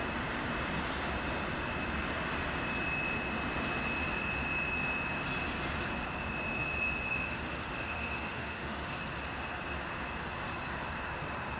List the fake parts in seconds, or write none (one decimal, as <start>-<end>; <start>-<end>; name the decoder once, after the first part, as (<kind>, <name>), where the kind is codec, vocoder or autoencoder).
7.1-8.9 (autoencoder, DAC-VAE)